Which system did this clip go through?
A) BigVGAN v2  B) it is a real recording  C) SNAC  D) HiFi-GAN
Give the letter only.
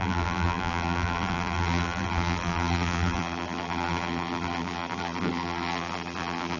A